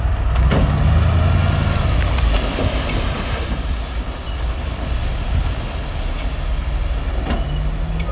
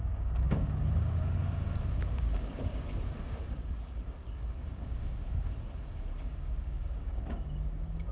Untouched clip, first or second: first